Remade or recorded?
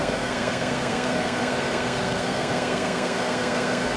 remade